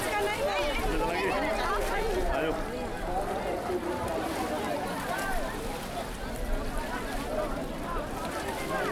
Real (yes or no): yes